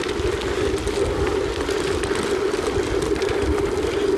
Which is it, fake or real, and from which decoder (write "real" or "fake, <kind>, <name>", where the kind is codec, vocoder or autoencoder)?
real